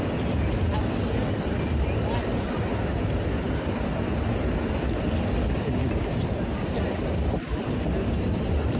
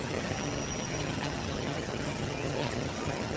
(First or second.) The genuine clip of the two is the first